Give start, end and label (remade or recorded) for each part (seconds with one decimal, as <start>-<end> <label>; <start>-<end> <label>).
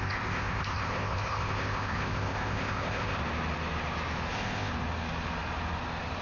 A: 0.0-3.2 remade; 3.2-4.3 recorded; 4.3-4.7 remade; 4.7-6.2 recorded